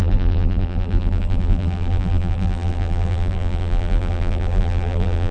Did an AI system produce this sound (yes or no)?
yes